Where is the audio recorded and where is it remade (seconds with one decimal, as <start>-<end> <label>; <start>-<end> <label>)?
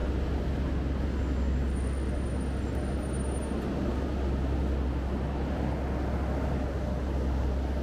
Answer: 0.0-7.8 recorded